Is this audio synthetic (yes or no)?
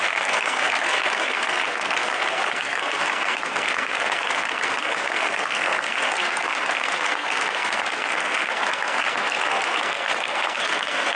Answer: yes